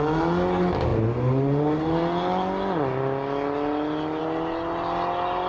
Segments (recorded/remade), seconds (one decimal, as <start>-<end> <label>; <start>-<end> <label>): 0.0-5.5 recorded